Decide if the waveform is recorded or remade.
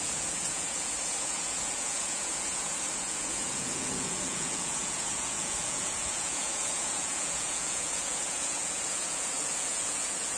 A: remade